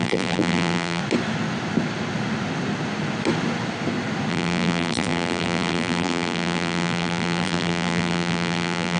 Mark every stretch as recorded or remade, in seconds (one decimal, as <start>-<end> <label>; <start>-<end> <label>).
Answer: 0.0-1.0 remade; 1.0-4.3 recorded; 4.3-9.0 remade